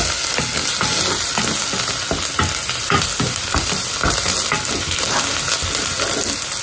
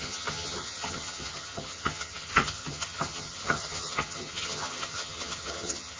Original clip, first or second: first